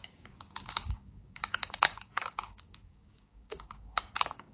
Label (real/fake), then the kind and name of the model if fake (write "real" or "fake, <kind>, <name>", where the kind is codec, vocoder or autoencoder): fake, codec, DAC